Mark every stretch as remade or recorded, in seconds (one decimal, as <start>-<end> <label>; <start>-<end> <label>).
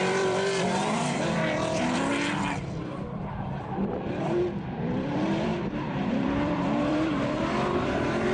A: 0.0-2.1 remade; 2.1-2.8 recorded; 2.8-8.3 remade